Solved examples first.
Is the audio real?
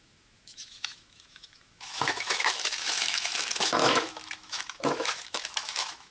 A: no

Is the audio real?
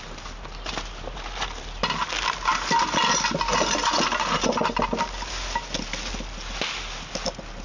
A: yes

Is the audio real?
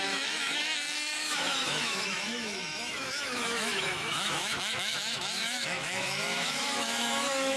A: no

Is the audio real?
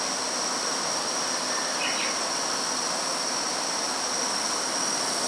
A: yes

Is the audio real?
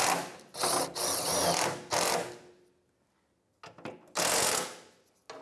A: yes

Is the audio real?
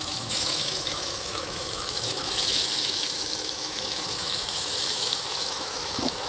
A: no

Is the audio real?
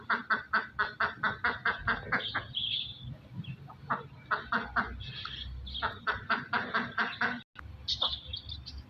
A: yes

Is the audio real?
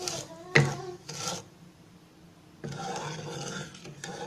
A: yes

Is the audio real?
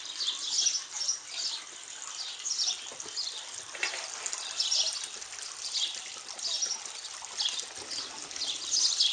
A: yes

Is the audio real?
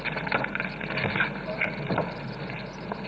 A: yes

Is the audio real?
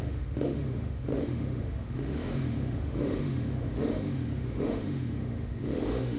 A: no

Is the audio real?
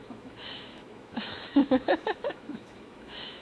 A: no